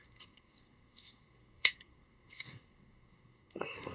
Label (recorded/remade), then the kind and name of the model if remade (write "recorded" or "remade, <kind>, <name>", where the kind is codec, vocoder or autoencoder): remade, codec, SNAC